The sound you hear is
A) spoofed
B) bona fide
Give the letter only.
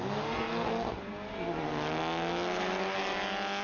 B